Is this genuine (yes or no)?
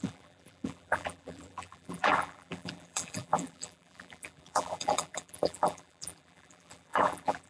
no